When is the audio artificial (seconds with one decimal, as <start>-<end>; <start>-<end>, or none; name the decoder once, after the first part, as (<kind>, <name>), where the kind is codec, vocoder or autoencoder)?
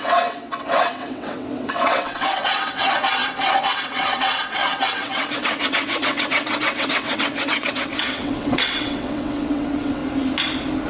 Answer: 0.0-10.0 (vocoder, WaveNeXt)